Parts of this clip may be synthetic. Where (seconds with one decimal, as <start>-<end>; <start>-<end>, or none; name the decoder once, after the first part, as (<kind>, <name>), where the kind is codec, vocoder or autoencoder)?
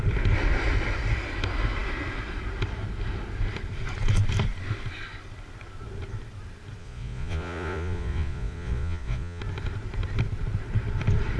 6.8-9.4 (vocoder, Vocos)